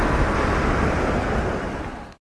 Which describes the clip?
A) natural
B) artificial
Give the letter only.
A